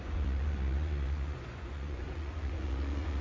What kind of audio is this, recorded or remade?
remade